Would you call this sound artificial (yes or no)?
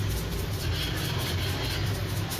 no